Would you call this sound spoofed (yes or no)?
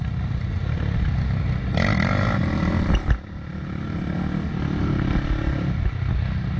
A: no